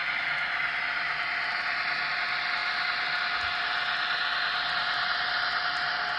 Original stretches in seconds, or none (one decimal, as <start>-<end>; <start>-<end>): 0.0-6.2